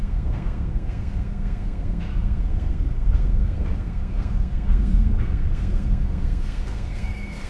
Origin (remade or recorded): remade